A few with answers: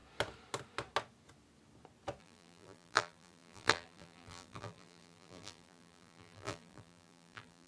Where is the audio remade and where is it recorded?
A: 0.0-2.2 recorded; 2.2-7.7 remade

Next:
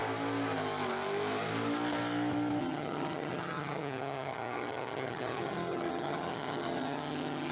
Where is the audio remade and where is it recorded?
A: 0.0-2.6 recorded; 2.6-7.5 remade

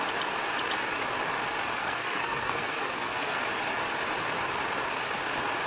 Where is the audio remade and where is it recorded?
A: 0.0-1.8 recorded; 1.8-3.4 remade; 3.4-5.7 recorded

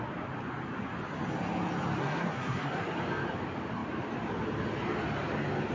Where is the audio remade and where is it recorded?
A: 0.0-2.0 recorded; 2.0-2.8 remade; 2.8-5.7 recorded

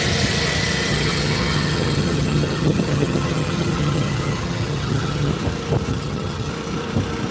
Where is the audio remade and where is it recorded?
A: 0.0-0.9 recorded; 0.9-5.3 remade; 5.3-5.9 recorded; 5.9-6.5 remade; 6.5-7.3 recorded